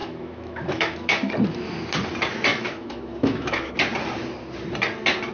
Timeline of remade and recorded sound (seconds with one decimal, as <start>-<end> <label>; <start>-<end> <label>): 0.0-1.3 remade; 1.3-2.5 recorded; 2.5-3.7 remade; 3.7-5.3 recorded